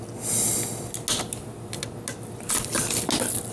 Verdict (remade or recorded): recorded